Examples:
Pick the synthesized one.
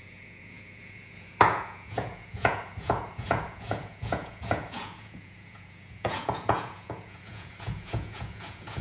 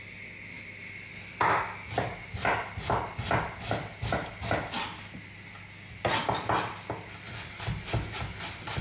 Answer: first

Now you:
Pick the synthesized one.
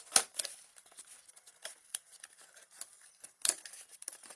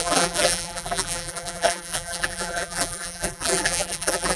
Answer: second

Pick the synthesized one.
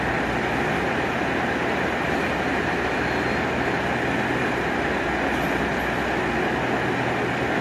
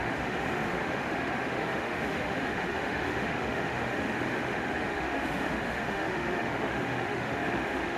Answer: second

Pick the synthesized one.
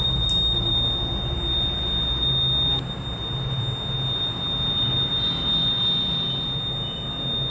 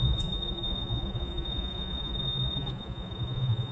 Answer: second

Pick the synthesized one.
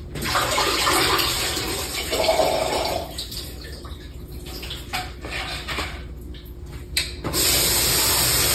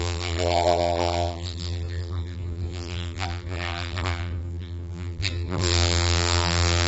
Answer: second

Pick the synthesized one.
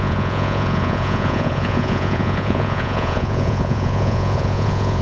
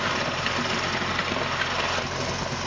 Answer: first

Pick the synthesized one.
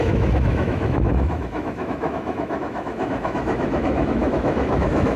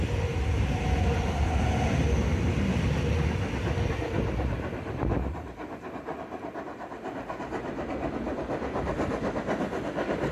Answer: first